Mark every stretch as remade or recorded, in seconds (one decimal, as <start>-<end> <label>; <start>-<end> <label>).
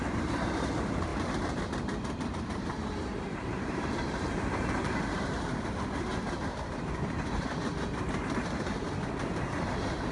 0.0-6.1 remade; 6.1-6.7 recorded; 6.7-10.1 remade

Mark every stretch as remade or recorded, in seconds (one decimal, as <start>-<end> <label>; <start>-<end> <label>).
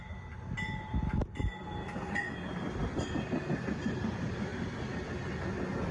0.0-5.9 recorded